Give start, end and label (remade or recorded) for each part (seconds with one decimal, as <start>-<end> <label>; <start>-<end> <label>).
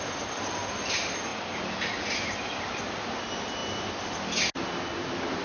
0.0-5.4 recorded